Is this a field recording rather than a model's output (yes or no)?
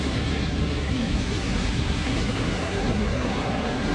no